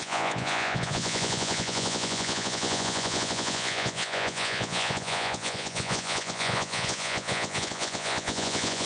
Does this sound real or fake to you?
fake